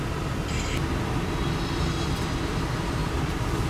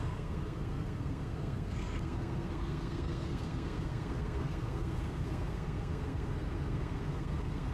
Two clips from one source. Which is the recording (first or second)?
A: first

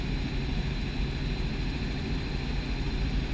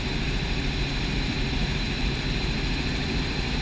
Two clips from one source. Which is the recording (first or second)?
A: first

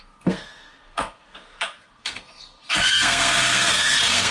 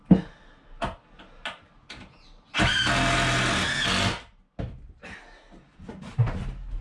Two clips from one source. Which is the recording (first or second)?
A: second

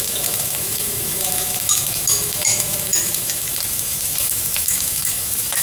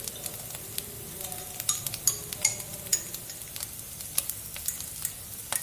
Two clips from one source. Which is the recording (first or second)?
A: second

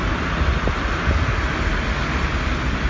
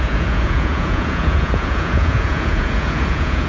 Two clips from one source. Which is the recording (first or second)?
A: first